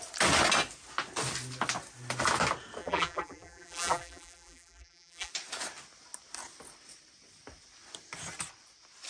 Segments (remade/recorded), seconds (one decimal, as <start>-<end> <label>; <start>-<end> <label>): 0.0-2.8 recorded; 2.8-5.3 remade; 5.3-9.1 recorded